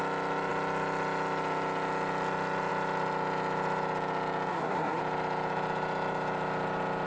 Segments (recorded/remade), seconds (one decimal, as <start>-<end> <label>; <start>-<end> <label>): 0.0-4.5 recorded; 4.5-5.0 remade; 5.0-7.1 recorded